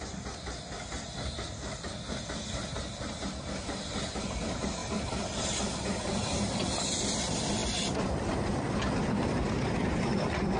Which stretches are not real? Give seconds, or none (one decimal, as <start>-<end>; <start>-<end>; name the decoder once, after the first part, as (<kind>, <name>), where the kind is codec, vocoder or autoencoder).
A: none